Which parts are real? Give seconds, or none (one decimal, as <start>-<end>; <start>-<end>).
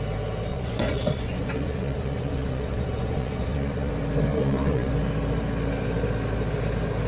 0.0-0.5; 3.9-4.3; 4.9-7.1